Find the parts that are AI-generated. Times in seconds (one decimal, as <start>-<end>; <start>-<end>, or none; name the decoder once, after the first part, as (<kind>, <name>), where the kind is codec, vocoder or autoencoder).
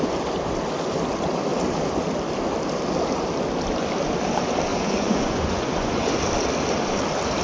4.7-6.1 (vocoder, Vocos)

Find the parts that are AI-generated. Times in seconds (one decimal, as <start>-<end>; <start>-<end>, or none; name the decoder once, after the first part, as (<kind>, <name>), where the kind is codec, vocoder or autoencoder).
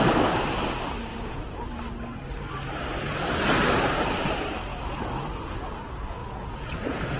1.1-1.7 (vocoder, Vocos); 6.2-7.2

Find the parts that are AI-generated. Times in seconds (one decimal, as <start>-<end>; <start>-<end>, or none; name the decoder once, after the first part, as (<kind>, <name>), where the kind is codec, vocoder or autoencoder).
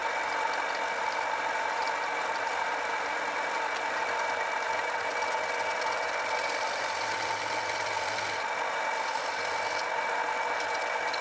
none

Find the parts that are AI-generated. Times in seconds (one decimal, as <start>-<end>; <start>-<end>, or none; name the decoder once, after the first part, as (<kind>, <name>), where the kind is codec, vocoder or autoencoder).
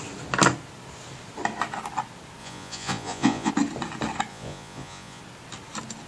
2.4-3.5 (vocoder, Vocos); 4.3-5.2